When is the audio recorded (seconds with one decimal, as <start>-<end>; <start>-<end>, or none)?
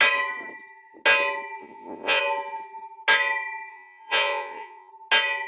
0.0-1.6; 2.2-3.7; 4.9-5.5